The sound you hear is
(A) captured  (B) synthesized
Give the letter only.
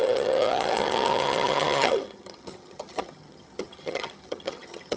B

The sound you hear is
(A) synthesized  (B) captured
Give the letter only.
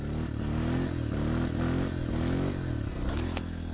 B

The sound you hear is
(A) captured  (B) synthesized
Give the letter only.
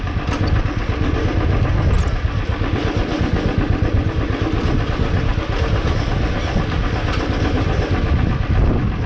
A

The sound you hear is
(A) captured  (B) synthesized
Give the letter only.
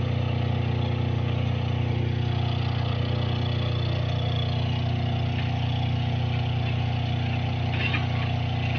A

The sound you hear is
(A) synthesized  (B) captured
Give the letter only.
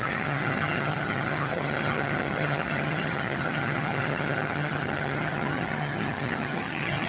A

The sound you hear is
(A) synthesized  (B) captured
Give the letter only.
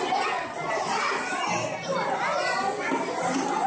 B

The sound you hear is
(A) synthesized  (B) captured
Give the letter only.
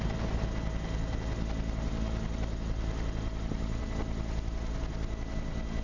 B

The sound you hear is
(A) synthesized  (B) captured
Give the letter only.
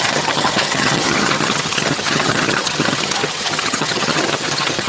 A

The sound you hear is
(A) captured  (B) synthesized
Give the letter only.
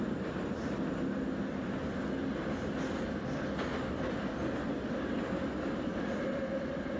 A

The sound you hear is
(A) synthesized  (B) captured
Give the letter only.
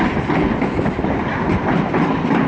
B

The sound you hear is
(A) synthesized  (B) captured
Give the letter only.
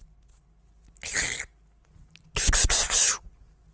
B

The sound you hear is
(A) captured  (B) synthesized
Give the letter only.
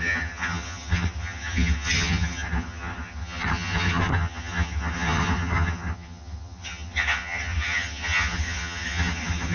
B